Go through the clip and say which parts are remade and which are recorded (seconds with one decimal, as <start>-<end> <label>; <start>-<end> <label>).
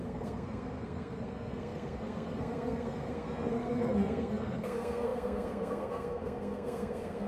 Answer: 0.0-7.3 remade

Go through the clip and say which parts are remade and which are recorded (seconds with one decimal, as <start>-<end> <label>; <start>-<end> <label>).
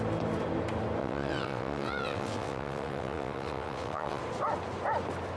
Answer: 0.0-1.0 recorded; 1.0-4.2 remade; 4.2-5.4 recorded